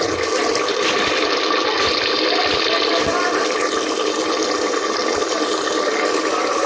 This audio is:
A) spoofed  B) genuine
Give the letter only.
B